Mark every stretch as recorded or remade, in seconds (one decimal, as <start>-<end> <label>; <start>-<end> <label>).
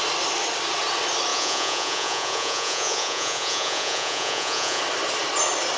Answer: 0.0-1.3 recorded; 1.3-4.8 remade; 4.8-5.8 recorded